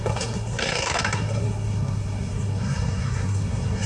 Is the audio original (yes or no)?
no